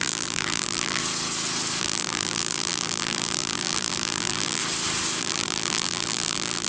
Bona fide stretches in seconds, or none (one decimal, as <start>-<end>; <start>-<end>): 1.0-1.8; 4.6-5.2